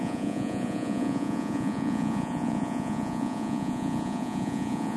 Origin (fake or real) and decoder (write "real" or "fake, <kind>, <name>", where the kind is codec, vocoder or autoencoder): fake, vocoder, Vocos